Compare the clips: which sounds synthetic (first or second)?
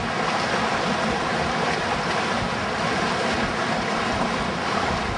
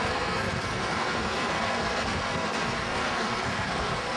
second